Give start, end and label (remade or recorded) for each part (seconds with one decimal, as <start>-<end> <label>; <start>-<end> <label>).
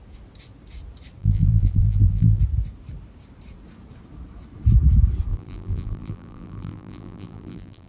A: 0.0-1.2 recorded; 1.2-2.4 remade; 2.4-5.3 recorded; 5.3-7.9 remade